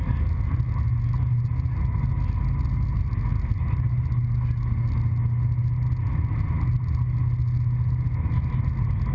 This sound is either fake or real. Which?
real